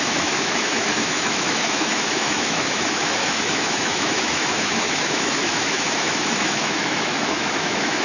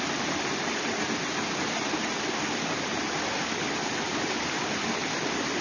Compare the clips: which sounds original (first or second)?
second